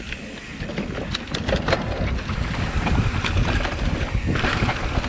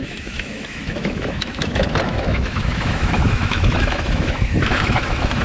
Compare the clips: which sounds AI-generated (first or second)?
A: second